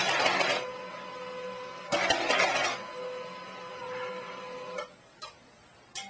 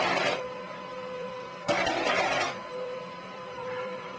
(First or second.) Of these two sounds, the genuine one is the first